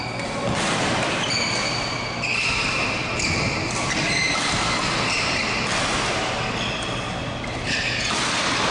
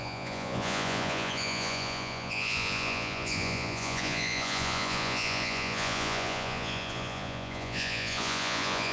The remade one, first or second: second